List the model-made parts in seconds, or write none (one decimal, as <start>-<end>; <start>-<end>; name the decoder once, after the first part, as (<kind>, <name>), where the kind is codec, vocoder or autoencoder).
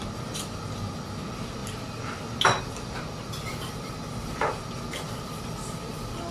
0.0-1.6 (vocoder, BigVGAN v2); 3.7-6.3